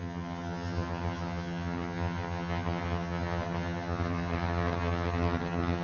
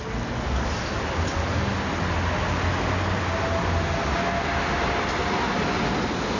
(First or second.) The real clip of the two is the second